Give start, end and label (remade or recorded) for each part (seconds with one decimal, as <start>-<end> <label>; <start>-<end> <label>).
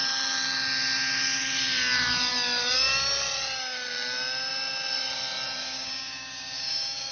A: 0.0-5.6 recorded; 5.6-7.1 remade